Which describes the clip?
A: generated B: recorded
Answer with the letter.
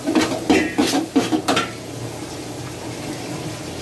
B